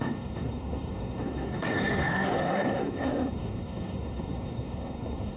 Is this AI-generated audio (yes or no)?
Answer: yes